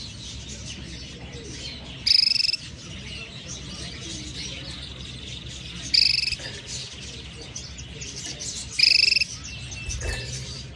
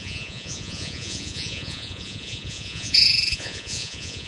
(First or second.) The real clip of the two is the first